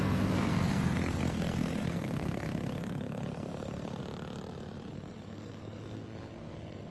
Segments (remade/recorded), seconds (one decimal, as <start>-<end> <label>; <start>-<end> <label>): 0.0-4.0 remade; 4.0-4.9 recorded; 4.9-6.9 remade